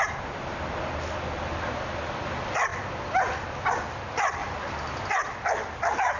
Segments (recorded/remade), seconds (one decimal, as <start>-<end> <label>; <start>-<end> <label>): 0.0-6.2 recorded